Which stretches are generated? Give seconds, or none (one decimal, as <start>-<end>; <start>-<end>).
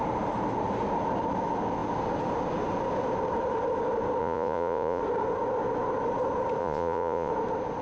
4.2-5.0; 6.6-7.3